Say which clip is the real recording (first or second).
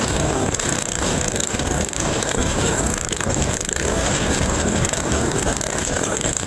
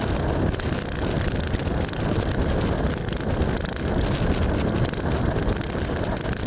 second